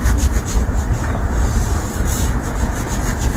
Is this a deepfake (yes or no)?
no